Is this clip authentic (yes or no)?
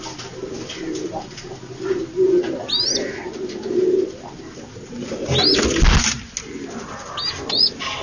yes